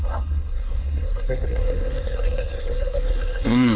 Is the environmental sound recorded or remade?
remade